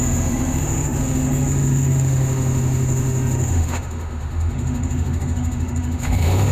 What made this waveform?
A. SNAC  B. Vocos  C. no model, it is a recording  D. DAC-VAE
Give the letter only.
D